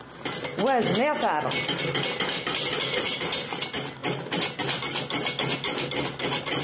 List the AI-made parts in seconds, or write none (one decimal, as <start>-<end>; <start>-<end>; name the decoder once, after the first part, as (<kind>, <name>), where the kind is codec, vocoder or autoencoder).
none